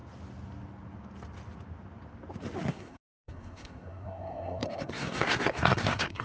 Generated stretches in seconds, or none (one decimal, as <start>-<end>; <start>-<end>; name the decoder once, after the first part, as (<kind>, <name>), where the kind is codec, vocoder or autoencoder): 2.7-6.2 (codec, SNAC)